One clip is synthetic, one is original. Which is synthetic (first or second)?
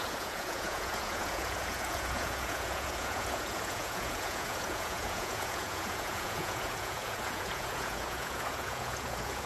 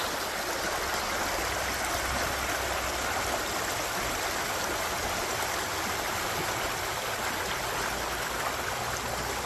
first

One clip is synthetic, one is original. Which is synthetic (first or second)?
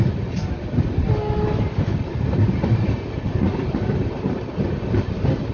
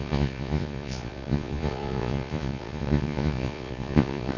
second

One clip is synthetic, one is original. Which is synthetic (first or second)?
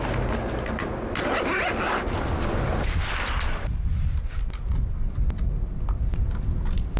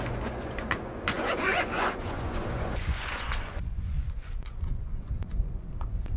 second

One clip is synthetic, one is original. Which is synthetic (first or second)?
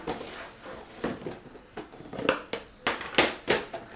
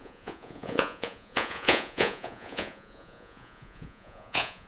second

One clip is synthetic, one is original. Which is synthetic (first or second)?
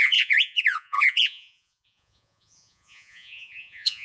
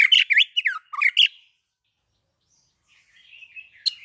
first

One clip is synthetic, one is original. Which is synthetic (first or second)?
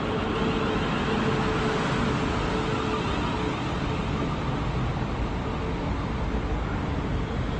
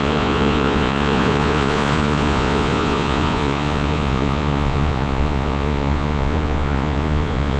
second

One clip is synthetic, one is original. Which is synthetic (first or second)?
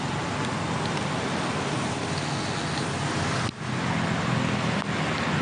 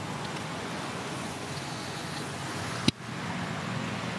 second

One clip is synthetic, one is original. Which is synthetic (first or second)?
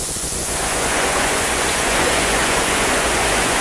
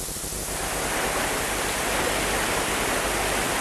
first